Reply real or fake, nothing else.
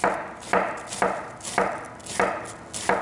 real